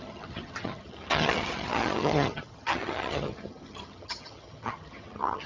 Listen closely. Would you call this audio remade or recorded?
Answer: remade